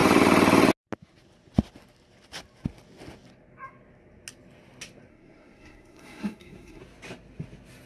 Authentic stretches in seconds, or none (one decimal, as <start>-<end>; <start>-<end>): 0.0-5.1; 6.8-7.9